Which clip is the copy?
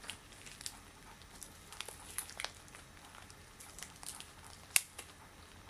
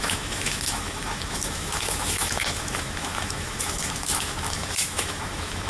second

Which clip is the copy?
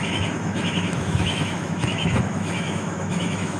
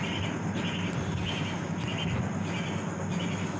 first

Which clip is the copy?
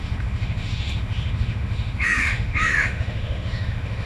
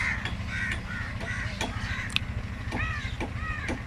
first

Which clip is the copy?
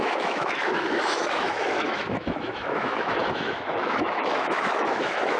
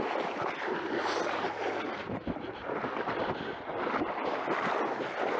first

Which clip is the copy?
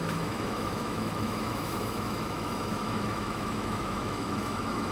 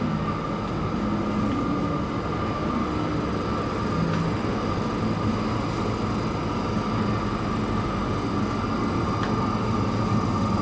first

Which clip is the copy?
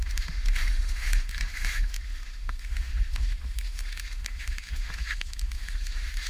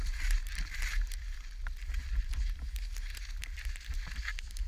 first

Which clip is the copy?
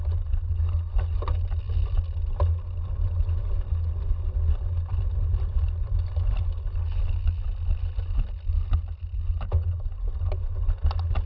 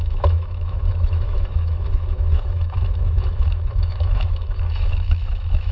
second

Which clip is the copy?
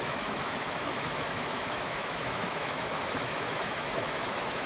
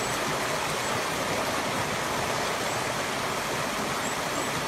first